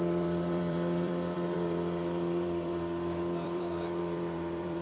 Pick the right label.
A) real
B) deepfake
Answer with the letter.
B